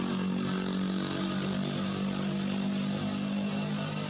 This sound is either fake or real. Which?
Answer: real